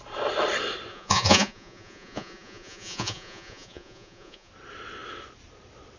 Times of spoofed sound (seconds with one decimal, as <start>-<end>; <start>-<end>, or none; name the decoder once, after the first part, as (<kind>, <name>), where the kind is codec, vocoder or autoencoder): 0.9-4.5 (vocoder, Vocos)